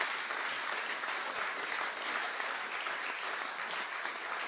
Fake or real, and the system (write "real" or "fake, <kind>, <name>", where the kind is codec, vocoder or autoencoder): real